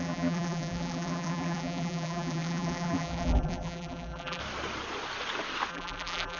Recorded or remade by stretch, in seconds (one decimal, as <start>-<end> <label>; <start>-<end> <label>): 0.0-4.4 remade; 4.4-5.7 recorded; 5.7-6.4 remade